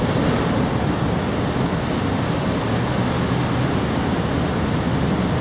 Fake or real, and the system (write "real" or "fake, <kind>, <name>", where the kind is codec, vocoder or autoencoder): real